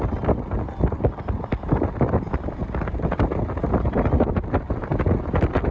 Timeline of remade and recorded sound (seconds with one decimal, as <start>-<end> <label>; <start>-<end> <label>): 0.0-5.7 recorded